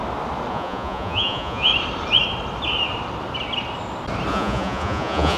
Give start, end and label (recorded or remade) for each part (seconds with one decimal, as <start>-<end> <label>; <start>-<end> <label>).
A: 0.0-0.5 recorded; 0.5-1.7 remade; 1.7-4.3 recorded; 4.3-5.4 remade